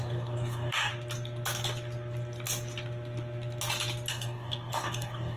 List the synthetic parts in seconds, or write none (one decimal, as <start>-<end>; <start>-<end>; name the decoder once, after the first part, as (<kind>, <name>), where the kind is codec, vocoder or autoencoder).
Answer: 0.0-0.9 (codec, DAC); 4.1-5.4